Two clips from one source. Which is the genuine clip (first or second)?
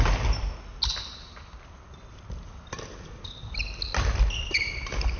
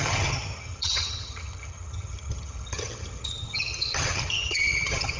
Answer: first